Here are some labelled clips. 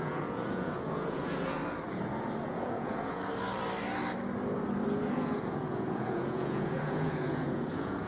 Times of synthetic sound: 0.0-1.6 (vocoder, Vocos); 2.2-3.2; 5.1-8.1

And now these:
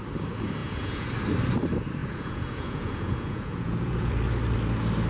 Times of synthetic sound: 0.6-1.1 (vocoder, Vocos); 2.0-4.1

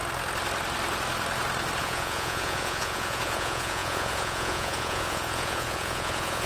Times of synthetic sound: 1.8-6.5 (vocoder, Vocos)

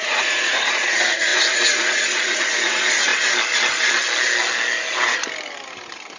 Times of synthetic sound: 0.0-3.1 (vocoder, Vocos)

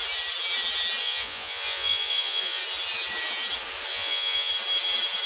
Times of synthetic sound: 1.0-2.6 (vocoder, Vocos); 3.9-4.5

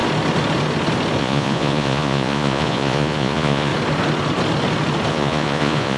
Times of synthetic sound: 1.2-3.7 (vocoder, Vocos); 5.1-6.0

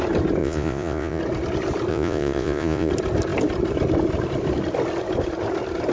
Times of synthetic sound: 0.4-1.2 (vocoder, Vocos); 1.9-2.9